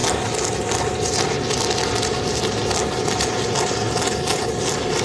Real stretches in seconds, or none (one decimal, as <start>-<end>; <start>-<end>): 0.0-5.0